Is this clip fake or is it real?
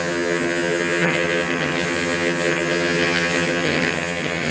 fake